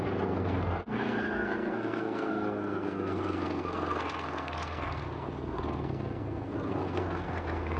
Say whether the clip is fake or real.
fake